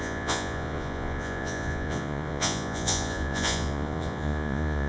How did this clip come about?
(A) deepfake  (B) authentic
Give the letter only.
A